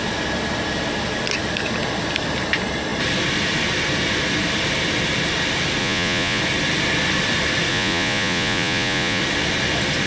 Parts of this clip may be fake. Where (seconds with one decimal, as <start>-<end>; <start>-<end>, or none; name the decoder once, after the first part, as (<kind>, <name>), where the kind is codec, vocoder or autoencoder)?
5.8-6.4 (vocoder, Vocos); 7.7-9.2